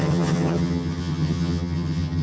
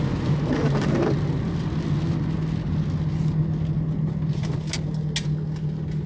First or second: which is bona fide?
second